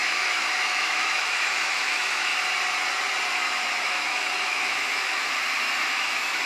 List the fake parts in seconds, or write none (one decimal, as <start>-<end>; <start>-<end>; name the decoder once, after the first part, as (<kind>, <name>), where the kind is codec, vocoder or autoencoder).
0.0-2.3 (autoencoder, DAC-VAE); 3.8-5.2; 5.9-6.5